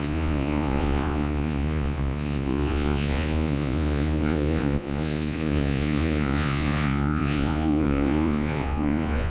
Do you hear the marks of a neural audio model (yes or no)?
yes